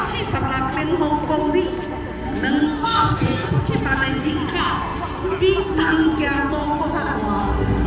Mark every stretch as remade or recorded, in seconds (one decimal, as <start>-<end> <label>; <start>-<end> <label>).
0.0-2.8 recorded; 2.8-3.7 remade; 3.7-7.9 recorded